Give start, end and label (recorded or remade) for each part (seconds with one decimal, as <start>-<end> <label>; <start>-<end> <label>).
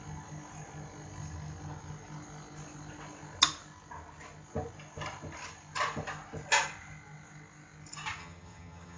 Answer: 0.0-8.2 recorded; 8.2-9.0 remade